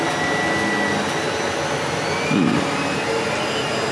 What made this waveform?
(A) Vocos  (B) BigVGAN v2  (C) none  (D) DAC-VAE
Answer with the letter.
C